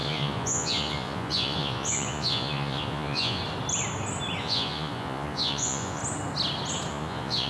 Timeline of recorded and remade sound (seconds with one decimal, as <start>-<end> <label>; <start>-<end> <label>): 0.0-3.4 remade; 3.4-4.4 recorded; 4.4-6.0 remade; 6.0-6.9 recorded; 6.9-7.5 remade